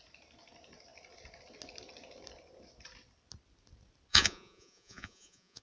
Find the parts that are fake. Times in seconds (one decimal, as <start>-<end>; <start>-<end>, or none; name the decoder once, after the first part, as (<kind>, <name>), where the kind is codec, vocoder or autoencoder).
4.1-5.6 (vocoder, Vocos)